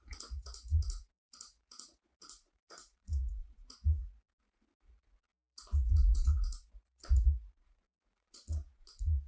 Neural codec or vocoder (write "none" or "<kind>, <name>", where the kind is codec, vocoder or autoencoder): vocoder, Vocos